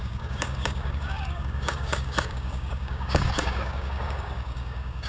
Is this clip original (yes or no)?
no